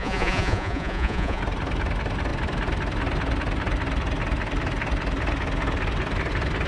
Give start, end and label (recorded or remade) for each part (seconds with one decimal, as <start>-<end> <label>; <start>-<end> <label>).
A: 0.0-1.4 remade; 1.4-6.7 recorded